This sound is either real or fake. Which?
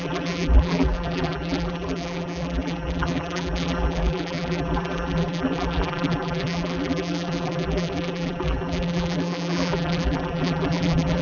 fake